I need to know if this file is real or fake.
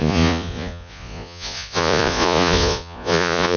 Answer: fake